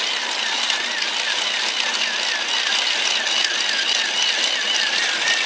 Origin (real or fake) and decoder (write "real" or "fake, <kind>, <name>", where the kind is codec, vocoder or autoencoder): real